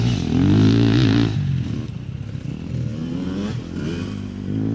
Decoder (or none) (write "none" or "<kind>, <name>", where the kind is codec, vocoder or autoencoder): none